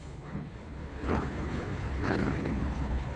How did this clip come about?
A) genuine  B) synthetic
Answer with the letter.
B